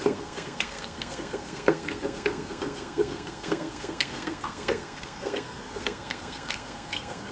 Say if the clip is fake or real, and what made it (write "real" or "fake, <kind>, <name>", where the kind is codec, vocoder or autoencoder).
fake, codec, SNAC